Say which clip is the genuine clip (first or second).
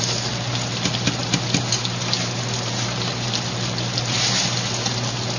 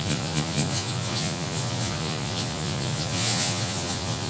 first